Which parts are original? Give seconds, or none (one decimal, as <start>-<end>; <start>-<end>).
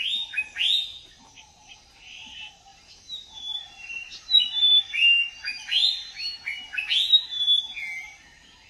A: 5.2-7.6